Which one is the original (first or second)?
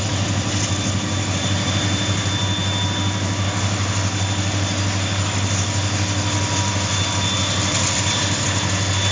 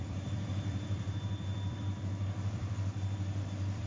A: first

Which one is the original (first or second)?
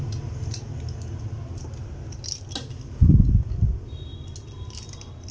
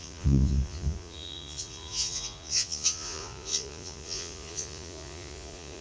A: first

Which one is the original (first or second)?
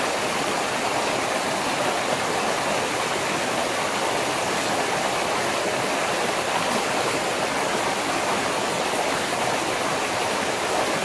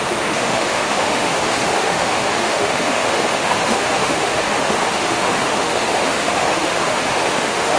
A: first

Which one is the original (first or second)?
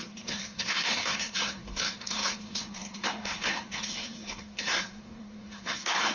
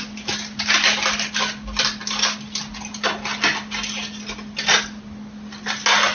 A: second